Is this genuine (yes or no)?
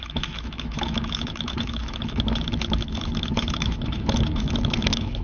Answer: no